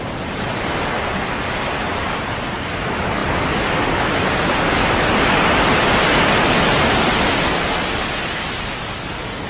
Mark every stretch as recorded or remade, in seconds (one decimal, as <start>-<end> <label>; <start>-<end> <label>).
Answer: 0.0-9.5 recorded